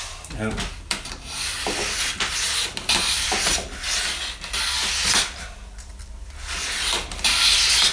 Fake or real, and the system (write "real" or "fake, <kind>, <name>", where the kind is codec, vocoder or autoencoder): real